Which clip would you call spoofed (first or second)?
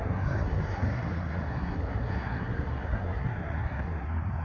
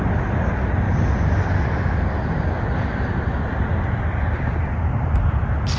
first